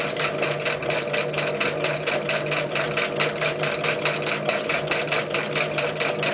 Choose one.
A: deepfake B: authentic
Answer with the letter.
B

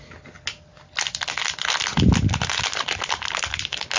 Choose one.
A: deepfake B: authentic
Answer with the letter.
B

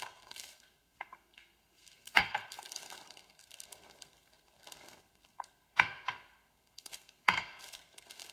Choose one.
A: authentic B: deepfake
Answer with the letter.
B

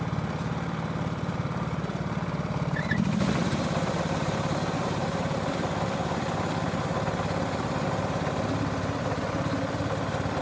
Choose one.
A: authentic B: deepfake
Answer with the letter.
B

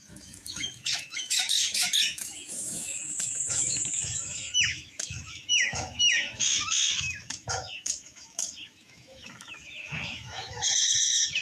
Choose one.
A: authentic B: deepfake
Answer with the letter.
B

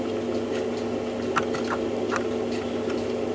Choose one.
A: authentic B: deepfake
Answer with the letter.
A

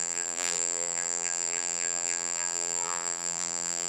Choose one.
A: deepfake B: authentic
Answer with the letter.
A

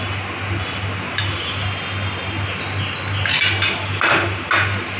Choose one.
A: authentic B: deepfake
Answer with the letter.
A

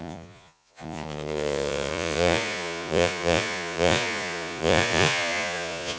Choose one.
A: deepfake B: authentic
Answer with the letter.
A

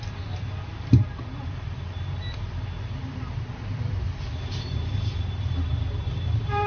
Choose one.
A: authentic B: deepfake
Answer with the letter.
B